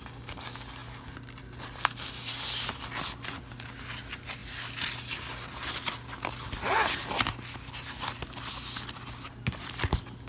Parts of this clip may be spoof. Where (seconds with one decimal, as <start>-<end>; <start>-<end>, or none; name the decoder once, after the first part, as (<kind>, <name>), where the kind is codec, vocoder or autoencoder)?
none